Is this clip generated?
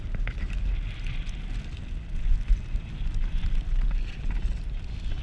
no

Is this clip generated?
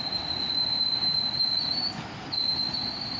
no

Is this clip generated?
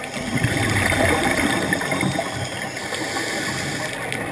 no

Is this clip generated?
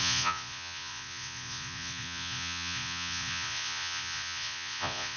yes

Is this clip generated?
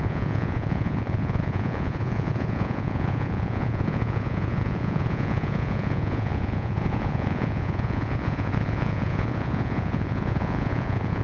yes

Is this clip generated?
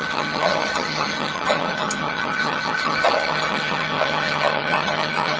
yes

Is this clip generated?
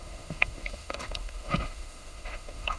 yes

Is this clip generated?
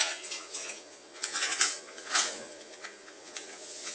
yes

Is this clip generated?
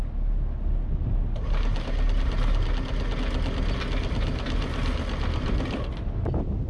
no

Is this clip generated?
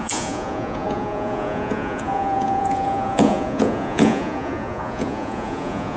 yes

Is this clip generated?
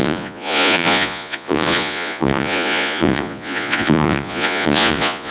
yes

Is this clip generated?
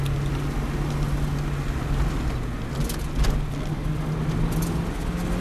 no